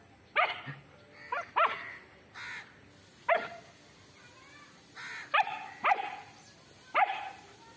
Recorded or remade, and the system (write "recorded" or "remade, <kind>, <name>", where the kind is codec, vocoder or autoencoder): recorded